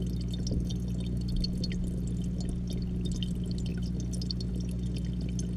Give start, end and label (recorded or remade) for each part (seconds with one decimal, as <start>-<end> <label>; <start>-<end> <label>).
0.0-5.6 recorded